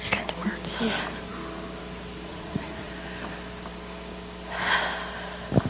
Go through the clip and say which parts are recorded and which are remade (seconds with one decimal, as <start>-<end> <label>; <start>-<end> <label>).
0.0-2.3 recorded; 2.3-2.9 remade; 2.9-5.7 recorded